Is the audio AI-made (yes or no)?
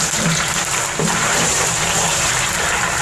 yes